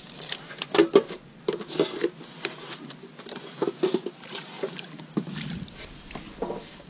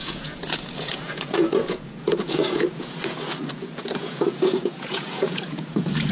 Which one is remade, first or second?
second